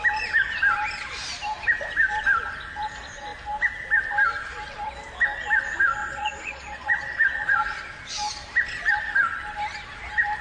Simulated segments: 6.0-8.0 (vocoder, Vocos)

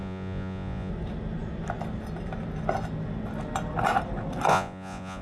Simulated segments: 0.0-0.9 (vocoder, Vocos); 4.5-5.2

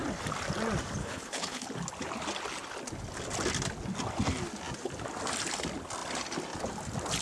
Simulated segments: 1.0-1.7 (codec, HILCodec)

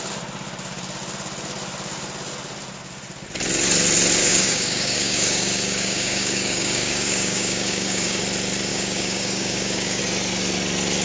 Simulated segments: 4.2-8.2 (codec, DAC); 8.7-10.0